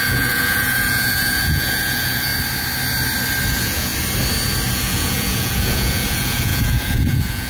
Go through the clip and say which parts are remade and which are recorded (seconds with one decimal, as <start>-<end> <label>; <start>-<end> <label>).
0.0-2.3 remade; 2.3-3.5 recorded; 3.5-3.9 remade; 3.9-4.7 recorded; 4.7-7.5 remade